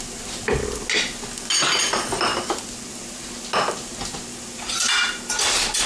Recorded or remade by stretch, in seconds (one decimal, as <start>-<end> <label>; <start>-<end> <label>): 0.0-5.9 recorded